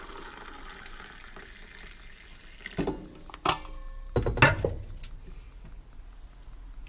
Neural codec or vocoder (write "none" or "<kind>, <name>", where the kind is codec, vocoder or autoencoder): none